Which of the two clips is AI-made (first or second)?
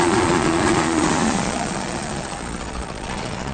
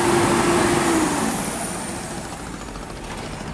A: first